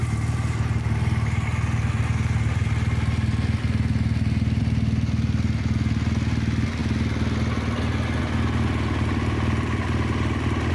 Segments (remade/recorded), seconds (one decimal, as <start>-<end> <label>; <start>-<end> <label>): 0.0-10.7 recorded